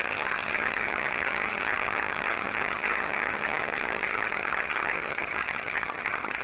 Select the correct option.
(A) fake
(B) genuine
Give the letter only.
A